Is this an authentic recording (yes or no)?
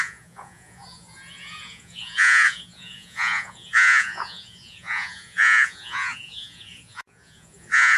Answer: no